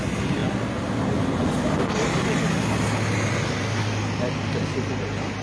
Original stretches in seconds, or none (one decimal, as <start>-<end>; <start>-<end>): 0.0-5.4